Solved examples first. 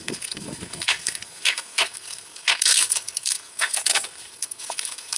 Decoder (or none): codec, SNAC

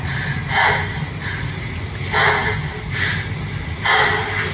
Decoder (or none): none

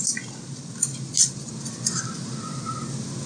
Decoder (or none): none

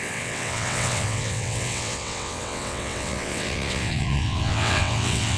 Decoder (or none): vocoder, WaveNeXt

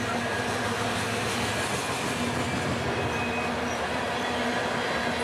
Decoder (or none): none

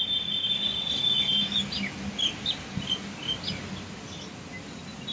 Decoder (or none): none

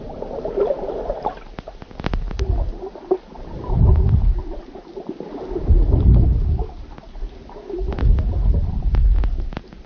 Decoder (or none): none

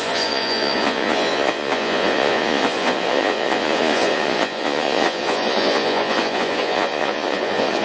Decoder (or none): vocoder, Vocos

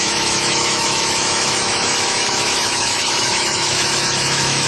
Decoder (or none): autoencoder, DAC-VAE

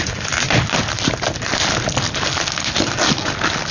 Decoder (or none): none